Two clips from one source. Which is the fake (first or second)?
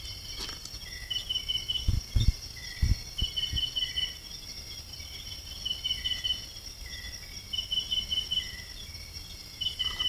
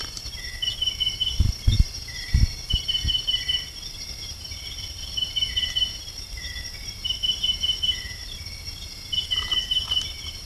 second